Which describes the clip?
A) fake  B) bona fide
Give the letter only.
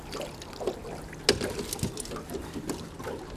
B